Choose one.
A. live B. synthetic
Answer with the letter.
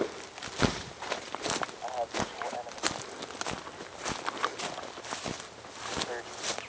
A